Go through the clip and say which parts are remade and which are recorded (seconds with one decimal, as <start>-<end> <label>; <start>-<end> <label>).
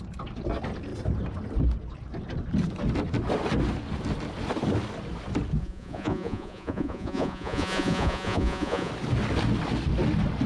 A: 0.0-5.6 recorded; 5.6-8.9 remade; 8.9-10.5 recorded